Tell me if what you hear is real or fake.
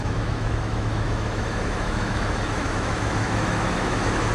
fake